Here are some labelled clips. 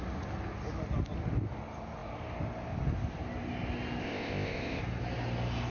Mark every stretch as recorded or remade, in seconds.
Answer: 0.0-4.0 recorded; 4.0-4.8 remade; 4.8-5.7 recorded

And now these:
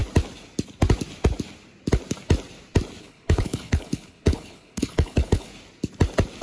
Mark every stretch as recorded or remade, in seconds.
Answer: 0.0-3.0 recorded; 3.0-5.5 remade; 5.5-6.4 recorded

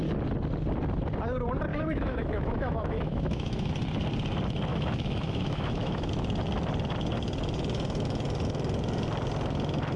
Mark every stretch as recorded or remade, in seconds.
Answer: 0.0-1.7 recorded; 1.7-3.7 remade; 3.7-4.7 recorded; 4.7-6.1 remade; 6.1-10.0 recorded

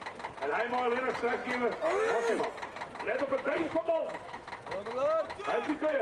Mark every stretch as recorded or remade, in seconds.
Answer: 0.0-3.1 recorded; 3.1-4.5 remade; 4.5-6.0 recorded

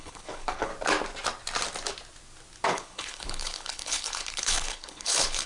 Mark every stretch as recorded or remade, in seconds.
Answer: 0.0-0.7 remade; 0.7-2.7 recorded; 2.7-5.5 remade

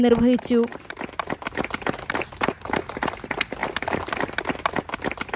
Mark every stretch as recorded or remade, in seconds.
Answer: 0.0-5.4 recorded